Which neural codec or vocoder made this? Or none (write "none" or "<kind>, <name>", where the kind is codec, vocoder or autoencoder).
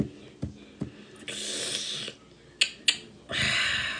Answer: none